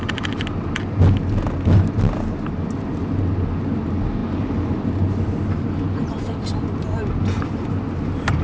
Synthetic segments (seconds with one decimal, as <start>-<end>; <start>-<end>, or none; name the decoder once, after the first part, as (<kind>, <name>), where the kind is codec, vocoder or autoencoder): none